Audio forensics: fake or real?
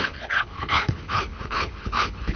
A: fake